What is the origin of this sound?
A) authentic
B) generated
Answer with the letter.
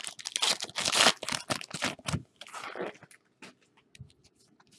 A